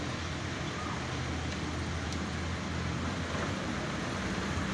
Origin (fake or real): real